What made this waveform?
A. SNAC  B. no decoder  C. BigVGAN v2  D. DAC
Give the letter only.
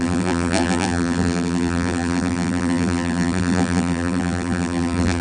C